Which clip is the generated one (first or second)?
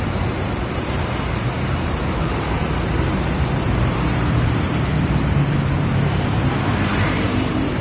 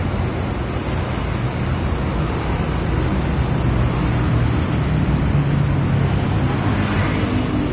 first